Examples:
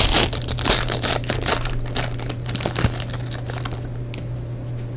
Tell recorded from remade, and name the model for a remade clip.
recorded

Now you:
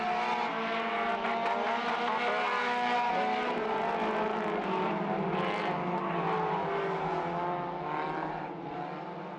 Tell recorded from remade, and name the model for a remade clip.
recorded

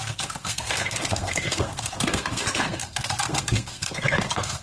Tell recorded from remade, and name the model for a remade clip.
remade, codec, SNAC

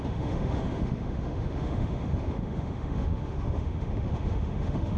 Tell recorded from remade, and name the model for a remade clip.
remade, autoencoder, DAC-VAE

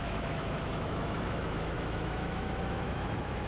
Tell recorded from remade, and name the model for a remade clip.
remade, autoencoder, DAC-VAE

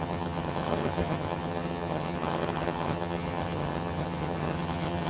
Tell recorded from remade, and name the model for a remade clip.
remade, vocoder, HiFi-GAN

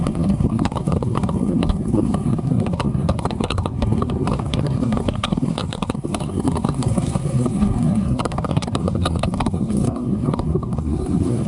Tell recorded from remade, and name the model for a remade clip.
remade, codec, SNAC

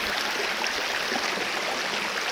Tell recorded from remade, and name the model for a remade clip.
recorded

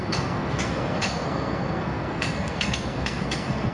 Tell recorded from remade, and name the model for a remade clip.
remade, codec, SNAC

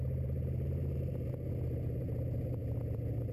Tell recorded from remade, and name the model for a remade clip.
recorded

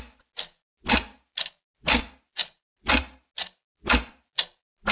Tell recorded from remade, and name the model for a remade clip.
recorded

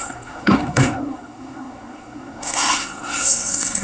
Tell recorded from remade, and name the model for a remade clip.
remade, codec, SNAC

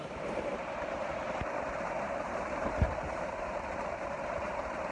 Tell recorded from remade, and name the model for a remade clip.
remade, vocoder, BigVGAN v2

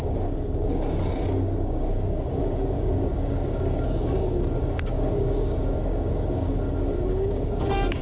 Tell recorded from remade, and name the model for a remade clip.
remade, codec, DAC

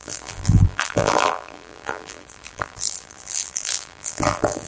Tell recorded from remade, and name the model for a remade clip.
remade, vocoder, BigVGAN v2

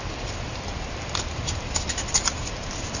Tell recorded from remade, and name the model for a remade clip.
recorded